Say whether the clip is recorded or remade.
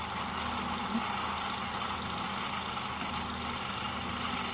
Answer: recorded